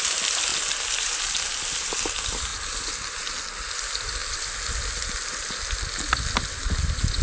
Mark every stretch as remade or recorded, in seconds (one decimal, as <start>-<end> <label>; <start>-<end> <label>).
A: 0.0-7.2 recorded